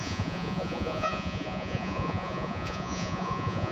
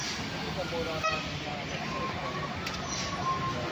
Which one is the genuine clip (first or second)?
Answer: second